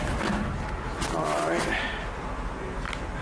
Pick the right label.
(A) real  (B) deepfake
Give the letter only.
A